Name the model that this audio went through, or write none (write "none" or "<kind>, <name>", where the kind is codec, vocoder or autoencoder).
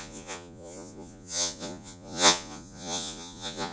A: vocoder, Vocos